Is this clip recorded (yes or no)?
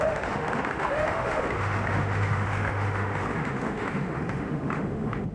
no